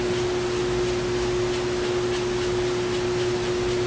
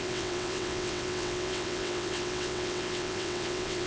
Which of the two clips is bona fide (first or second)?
first